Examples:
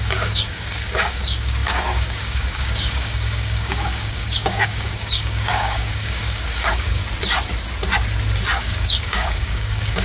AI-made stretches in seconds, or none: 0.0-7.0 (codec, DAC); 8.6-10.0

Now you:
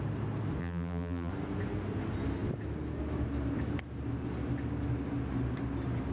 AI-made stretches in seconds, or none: 0.6-1.3 (vocoder, BigVGAN v2)

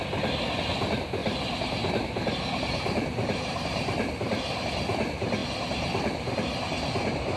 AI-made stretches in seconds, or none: 1.2-4.4 (vocoder, BigVGAN v2)

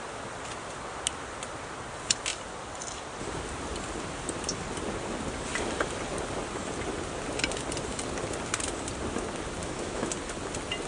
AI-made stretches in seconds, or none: 9.6-10.1 (autoencoder, DAC-VAE)

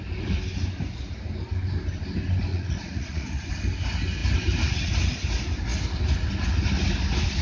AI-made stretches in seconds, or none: 2.5-3.5 (vocoder, Vocos)

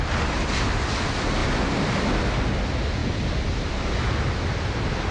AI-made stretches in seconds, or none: none

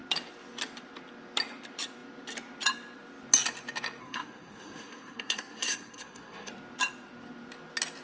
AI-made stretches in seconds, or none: 4.0-6.5 (codec, SNAC)

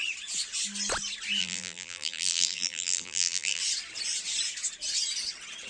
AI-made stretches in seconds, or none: 1.4-3.6 (vocoder, BigVGAN v2)